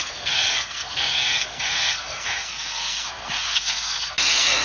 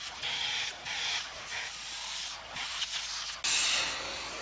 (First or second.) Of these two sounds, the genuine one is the second